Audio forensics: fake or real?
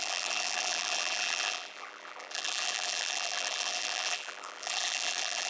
fake